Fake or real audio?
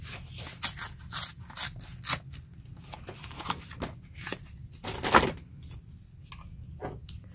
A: real